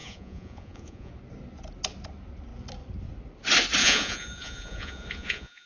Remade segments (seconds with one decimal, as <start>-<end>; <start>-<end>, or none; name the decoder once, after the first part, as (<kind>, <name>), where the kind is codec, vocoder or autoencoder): 0.0-1.1 (vocoder, Vocos); 3.8-5.7